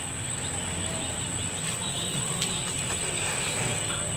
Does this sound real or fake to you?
real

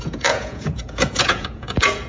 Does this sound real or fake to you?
fake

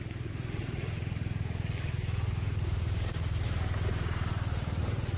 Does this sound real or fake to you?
real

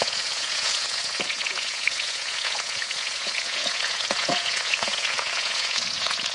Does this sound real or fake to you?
fake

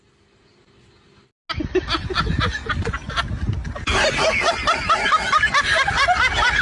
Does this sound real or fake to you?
real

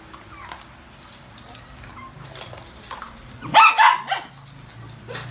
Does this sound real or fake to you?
real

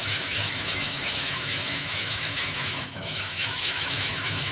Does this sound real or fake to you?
fake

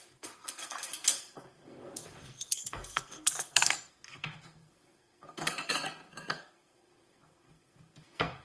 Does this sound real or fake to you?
fake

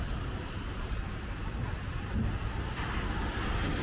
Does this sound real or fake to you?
real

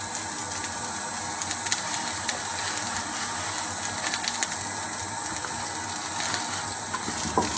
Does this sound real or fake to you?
real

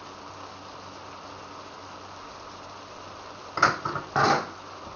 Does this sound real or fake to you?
real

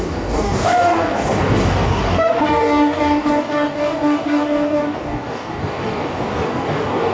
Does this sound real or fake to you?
fake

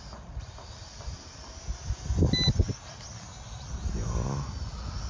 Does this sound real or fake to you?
real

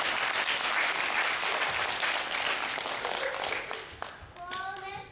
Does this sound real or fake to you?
real